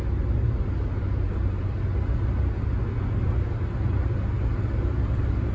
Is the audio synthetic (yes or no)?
no